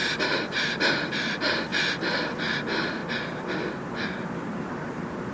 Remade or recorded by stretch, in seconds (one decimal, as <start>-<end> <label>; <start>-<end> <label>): 0.0-1.7 remade; 1.7-2.5 recorded; 2.5-3.0 remade; 3.0-3.7 recorded; 3.7-5.3 remade